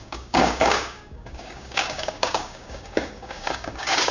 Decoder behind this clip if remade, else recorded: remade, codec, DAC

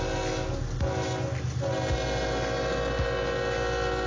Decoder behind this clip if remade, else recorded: recorded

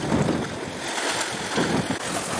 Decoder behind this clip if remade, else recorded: recorded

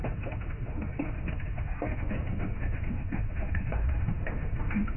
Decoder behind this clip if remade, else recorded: remade, autoencoder, DAC-VAE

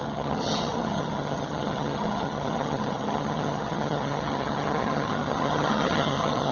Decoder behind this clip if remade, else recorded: remade, vocoder, HiFi-GAN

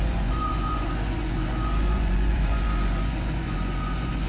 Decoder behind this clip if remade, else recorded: remade, vocoder, Vocos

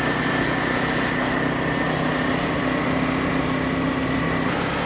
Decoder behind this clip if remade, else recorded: recorded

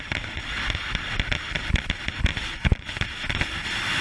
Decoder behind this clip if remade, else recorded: recorded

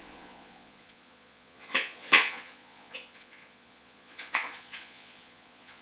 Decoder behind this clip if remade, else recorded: remade, vocoder, Vocos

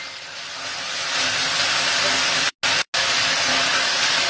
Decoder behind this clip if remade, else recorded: recorded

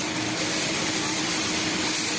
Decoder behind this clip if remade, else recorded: remade, vocoder, BigVGAN v2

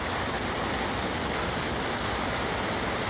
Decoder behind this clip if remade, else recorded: recorded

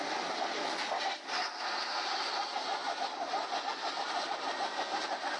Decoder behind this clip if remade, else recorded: recorded